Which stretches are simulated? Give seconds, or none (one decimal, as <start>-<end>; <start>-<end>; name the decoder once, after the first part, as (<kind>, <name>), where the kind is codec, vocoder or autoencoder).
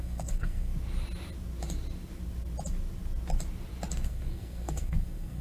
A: 0.0-0.7 (codec, SNAC); 3.9-5.4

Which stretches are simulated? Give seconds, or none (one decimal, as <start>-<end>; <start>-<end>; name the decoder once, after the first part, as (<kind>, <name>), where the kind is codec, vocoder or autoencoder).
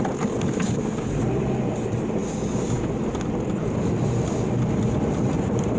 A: none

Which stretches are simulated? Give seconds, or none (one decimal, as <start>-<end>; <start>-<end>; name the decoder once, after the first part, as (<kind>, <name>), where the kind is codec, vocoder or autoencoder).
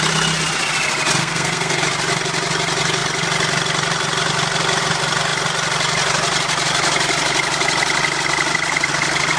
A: 1.2-1.8 (codec, SNAC)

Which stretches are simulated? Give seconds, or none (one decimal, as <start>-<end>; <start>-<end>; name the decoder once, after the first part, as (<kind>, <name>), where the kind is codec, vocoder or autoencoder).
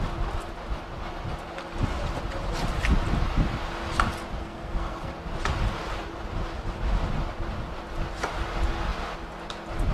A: 4.4-5.1 (codec, SNAC)